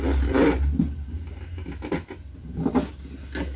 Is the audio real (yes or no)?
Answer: yes